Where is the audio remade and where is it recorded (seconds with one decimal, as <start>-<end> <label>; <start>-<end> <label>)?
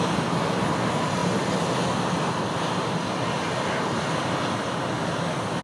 0.0-5.6 recorded